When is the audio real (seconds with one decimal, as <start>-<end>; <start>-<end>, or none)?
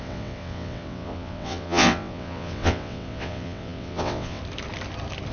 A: 4.4-5.3